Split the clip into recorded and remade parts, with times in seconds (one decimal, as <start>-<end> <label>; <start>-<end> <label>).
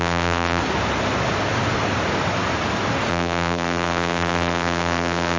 0.0-0.6 remade; 0.6-3.1 recorded; 3.1-5.4 remade